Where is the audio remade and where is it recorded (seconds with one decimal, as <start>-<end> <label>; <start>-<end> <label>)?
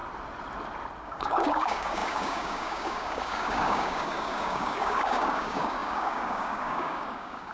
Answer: 0.0-1.0 recorded; 1.0-7.5 remade